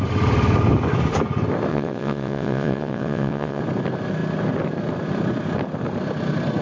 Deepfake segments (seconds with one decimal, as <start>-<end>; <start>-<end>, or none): 1.7-3.6